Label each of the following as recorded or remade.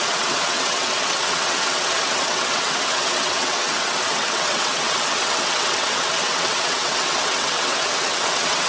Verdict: remade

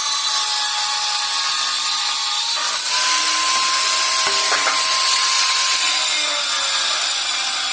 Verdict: recorded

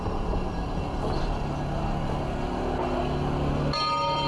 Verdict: recorded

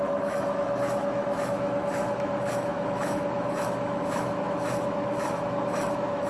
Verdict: remade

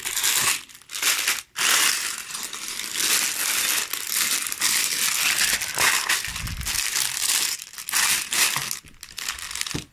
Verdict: recorded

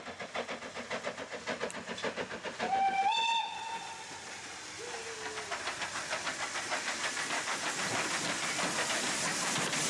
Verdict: recorded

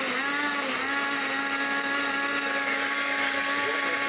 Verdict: recorded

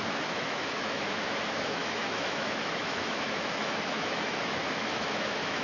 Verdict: remade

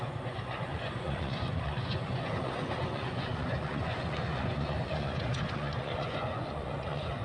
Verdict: remade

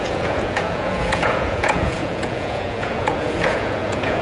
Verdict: remade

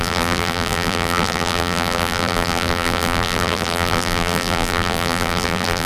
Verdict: remade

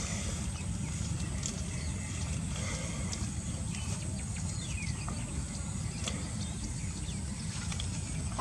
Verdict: recorded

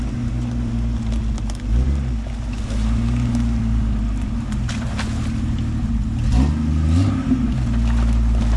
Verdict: recorded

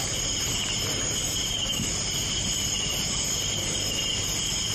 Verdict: recorded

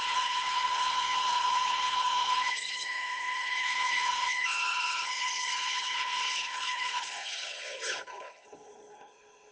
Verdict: remade